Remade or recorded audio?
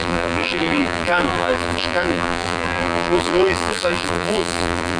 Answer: remade